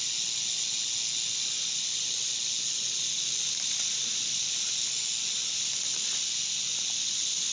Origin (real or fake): real